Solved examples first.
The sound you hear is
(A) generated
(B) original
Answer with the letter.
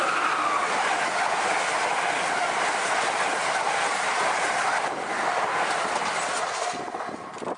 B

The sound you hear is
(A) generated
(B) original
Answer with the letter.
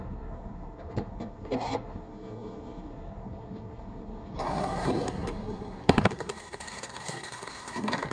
A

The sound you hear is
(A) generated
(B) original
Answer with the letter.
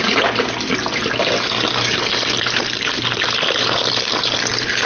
B